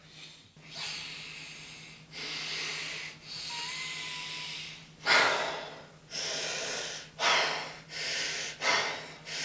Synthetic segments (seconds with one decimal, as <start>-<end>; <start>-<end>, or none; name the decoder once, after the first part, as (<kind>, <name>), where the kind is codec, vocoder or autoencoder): none